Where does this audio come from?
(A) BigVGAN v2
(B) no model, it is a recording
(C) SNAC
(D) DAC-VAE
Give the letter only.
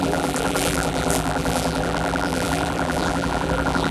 A